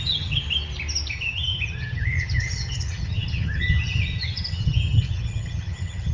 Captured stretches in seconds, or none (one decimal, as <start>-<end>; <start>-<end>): 0.4-1.1